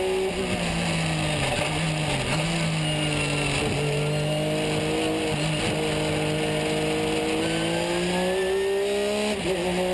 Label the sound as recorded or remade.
recorded